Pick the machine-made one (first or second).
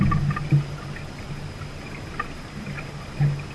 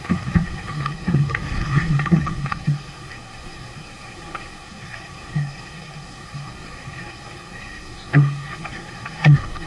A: second